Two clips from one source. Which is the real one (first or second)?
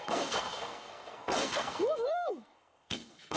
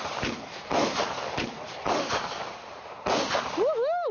second